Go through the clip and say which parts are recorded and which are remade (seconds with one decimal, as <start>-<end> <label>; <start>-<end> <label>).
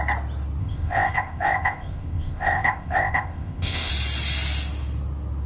0.0-0.6 recorded; 0.6-3.9 remade; 3.9-5.5 recorded